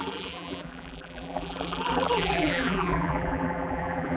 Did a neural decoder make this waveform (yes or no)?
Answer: yes